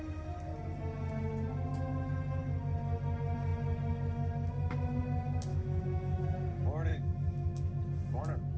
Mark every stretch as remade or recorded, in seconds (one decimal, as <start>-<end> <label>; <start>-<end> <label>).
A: 0.0-5.5 recorded; 5.5-6.2 remade; 6.2-6.9 recorded; 6.9-7.8 remade; 7.8-8.6 recorded